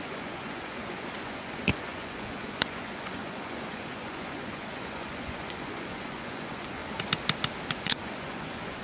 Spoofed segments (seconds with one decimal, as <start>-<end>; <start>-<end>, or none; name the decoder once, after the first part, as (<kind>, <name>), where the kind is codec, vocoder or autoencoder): 0.0-6.8 (vocoder, Vocos); 7.7-8.8